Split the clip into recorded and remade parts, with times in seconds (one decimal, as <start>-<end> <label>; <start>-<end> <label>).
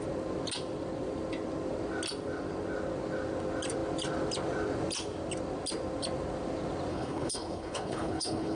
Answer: 0.0-6.9 recorded; 6.9-8.6 remade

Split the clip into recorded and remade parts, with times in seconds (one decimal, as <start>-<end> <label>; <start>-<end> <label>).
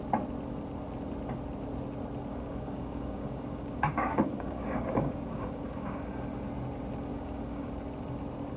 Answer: 0.0-2.3 recorded; 2.3-6.1 remade; 6.1-7.1 recorded; 7.1-7.7 remade; 7.7-8.6 recorded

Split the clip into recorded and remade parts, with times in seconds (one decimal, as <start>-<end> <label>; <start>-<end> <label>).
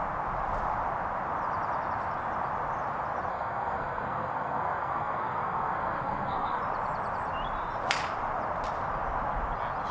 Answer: 0.0-3.3 recorded; 3.3-6.6 remade; 6.6-9.9 recorded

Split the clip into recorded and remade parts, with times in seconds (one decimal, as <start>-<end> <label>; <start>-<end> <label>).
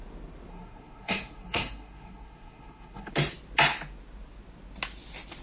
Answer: 0.0-0.5 recorded; 0.5-3.1 remade; 3.1-5.4 recorded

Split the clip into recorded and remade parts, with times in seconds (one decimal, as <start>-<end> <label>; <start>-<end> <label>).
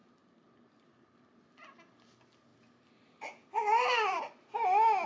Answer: 0.0-5.1 recorded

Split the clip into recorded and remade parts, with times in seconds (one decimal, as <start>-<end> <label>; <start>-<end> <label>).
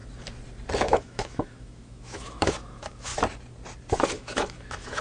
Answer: 0.0-0.8 recorded; 0.8-3.1 remade; 3.1-4.1 recorded; 4.1-5.0 remade